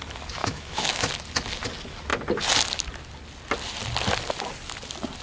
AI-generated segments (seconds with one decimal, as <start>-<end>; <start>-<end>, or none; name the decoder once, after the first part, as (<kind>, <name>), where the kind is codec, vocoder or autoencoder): 0.4-1.1 (autoencoder, DAC-VAE)